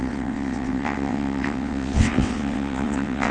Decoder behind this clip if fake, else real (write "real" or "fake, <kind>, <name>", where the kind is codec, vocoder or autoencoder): fake, vocoder, WaveNeXt